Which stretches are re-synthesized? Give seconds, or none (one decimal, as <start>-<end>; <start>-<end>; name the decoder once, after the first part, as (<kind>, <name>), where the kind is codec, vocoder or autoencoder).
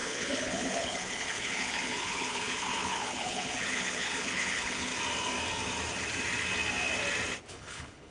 0.0-4.9 (codec, HILCodec); 7.5-8.1